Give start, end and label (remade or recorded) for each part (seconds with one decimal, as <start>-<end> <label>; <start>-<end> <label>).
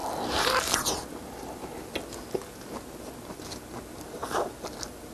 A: 0.0-5.1 recorded